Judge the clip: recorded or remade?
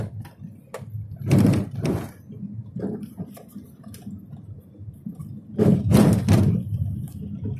recorded